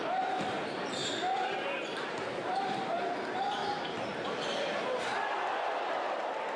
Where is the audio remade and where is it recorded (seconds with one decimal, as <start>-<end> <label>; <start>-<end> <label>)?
0.0-1.0 remade; 1.0-1.5 recorded; 1.5-3.6 remade; 3.6-5.8 recorded; 5.8-6.6 remade